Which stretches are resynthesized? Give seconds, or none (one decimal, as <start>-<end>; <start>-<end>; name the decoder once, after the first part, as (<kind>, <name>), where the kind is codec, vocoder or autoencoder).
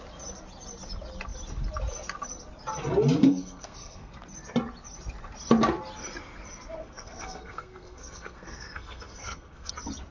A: 3.2-4.1 (codec, SNAC); 6.8-9.7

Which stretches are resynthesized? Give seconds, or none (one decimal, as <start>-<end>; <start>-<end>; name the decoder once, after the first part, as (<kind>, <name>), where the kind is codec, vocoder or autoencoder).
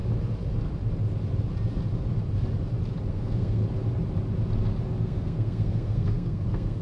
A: 3.1-3.6 (codec, SNAC); 5.0-6.8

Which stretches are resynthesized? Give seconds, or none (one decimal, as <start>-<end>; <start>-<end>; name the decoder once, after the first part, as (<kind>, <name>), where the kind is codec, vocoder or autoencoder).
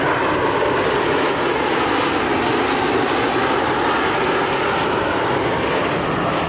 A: none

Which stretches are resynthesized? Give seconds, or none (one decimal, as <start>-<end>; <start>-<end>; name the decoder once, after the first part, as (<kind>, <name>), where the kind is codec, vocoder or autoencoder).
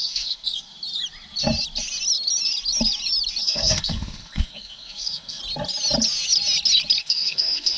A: 0.0-0.7 (codec, SNAC); 3.4-5.4; 7.0-7.8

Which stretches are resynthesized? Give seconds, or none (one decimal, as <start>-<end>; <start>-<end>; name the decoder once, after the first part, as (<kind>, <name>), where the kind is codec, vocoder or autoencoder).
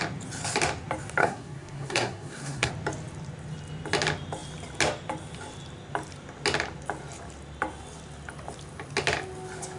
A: 1.2-2.7 (codec, SNAC)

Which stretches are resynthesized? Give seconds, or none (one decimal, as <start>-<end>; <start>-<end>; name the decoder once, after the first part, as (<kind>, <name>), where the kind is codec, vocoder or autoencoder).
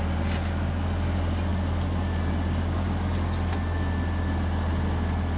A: none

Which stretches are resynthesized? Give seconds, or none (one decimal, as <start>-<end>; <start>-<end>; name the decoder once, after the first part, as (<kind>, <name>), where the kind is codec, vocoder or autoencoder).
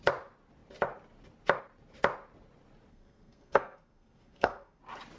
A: 2.9-4.8 (codec, SNAC)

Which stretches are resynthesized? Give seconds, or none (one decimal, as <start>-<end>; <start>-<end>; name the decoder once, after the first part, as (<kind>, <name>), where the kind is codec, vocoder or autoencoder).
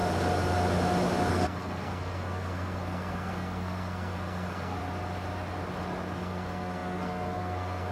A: 1.3-4.8 (codec, SNAC); 6.2-7.9